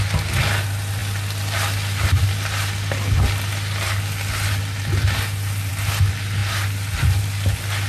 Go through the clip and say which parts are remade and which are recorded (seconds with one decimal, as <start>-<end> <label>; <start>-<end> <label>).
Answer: 0.0-7.9 recorded